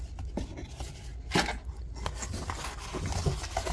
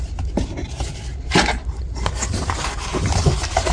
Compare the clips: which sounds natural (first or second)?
first